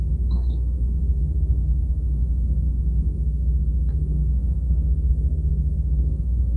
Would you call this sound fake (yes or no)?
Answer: yes